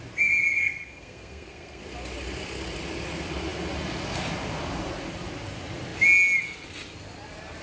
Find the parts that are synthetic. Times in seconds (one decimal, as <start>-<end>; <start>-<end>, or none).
0.6-1.8